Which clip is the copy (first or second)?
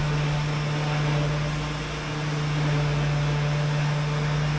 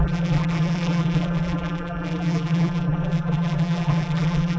second